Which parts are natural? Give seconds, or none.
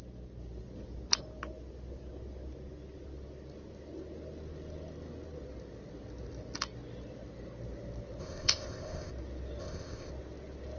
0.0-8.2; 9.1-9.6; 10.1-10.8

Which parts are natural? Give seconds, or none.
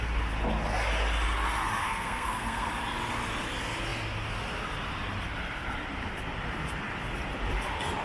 0.0-1.8; 2.7-8.0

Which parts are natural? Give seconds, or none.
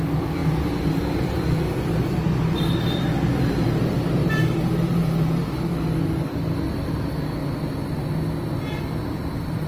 5.7-6.9; 7.4-9.2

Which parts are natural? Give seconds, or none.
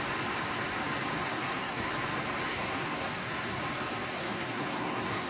0.0-1.3; 1.9-2.5; 3.6-4.1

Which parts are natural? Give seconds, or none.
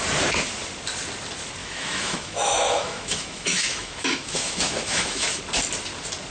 0.0-1.6; 5.4-6.3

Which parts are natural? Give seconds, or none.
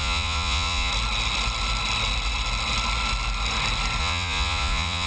0.9-4.0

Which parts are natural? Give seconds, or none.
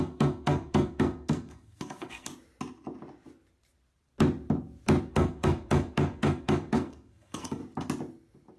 2.3-5.1; 7.6-8.6